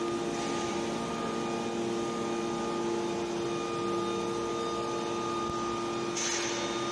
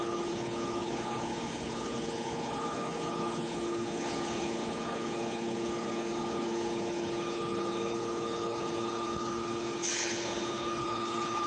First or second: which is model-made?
second